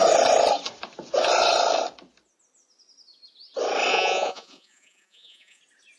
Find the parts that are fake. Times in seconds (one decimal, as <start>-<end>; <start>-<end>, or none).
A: 3.9-5.6